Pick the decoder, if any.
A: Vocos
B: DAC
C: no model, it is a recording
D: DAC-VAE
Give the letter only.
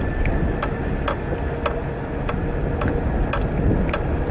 C